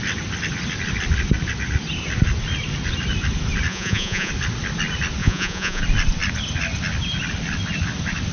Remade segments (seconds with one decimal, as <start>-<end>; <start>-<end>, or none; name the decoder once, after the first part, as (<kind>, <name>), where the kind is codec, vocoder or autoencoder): 3.7-4.3 (vocoder, Vocos); 5.2-5.8